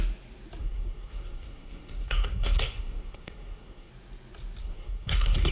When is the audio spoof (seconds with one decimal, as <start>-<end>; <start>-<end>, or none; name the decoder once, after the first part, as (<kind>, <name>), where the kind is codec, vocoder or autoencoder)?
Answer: 0.6-3.9 (codec, SNAC); 4.6-5.5